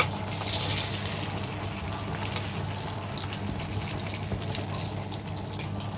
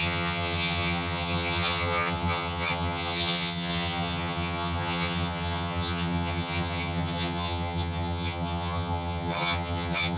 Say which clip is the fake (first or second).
second